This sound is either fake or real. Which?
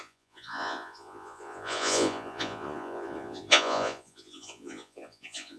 fake